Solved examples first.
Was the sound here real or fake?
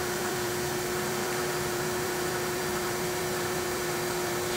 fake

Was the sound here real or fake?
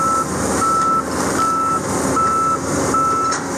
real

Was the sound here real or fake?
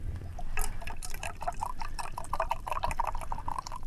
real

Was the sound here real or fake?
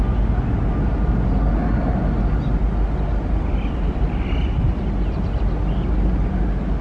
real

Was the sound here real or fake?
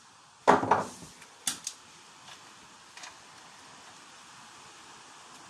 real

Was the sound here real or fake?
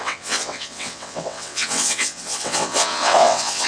fake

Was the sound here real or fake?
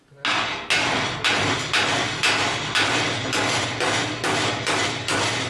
real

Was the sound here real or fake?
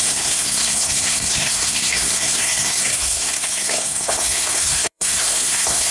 fake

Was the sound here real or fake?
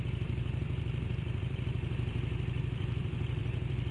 fake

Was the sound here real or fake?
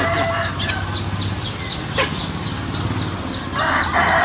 real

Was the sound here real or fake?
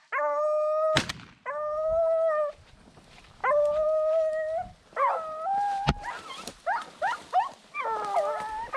real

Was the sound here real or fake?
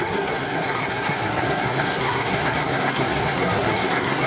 fake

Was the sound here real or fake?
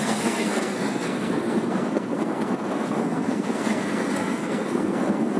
fake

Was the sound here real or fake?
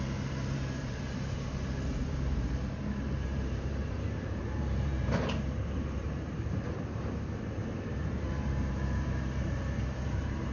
fake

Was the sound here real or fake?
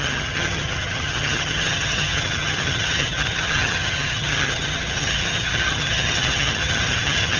fake